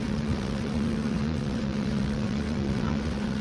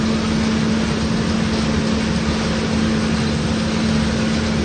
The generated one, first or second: first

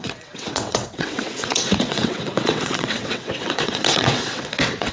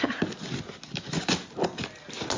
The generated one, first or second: first